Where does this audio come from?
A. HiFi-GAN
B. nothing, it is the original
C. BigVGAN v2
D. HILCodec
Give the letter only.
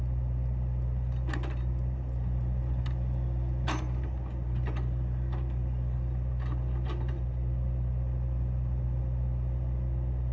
B